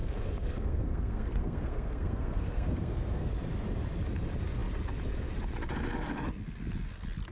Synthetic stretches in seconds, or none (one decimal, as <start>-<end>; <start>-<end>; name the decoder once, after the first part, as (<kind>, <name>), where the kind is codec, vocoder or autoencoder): 0.0-3.3 (codec, SNAC)